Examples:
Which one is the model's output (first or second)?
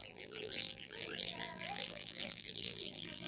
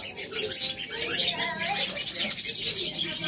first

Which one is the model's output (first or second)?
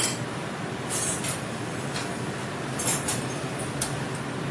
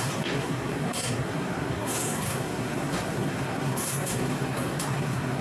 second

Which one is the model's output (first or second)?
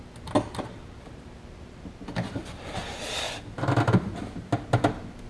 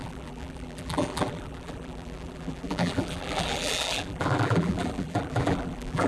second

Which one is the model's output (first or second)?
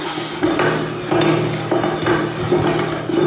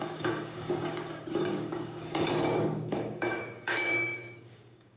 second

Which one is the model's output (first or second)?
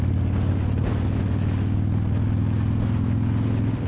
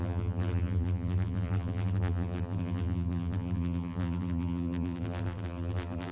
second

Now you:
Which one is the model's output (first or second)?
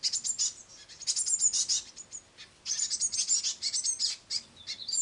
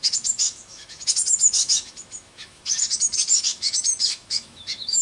second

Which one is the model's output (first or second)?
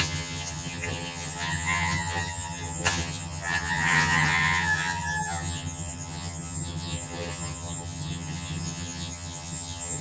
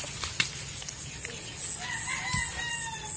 first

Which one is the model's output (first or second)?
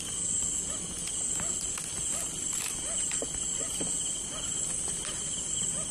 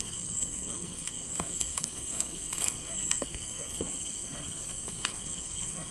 second